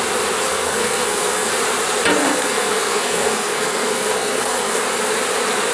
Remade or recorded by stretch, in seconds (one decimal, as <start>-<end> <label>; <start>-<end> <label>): 0.0-0.5 recorded; 0.5-1.5 remade; 1.5-2.2 recorded; 2.2-4.8 remade; 4.8-5.7 recorded